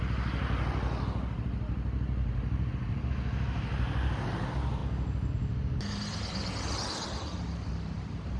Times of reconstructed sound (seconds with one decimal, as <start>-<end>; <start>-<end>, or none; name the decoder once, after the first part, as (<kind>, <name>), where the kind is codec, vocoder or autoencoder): none